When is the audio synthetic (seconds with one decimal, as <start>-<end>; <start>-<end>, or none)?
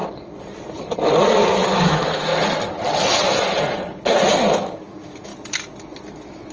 1.4-2.3; 4.5-5.3; 6.1-6.5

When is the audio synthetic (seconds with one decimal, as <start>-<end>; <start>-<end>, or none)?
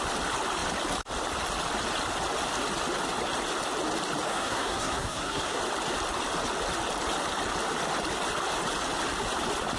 4.3-5.6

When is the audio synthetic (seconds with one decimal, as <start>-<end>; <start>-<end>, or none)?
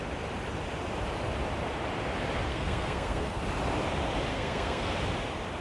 2.5-3.4; 4.3-4.9